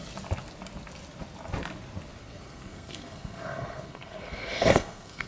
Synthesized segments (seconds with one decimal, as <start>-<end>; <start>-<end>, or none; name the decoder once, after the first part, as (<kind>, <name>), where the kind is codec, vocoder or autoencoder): 2.2-5.3 (codec, SNAC)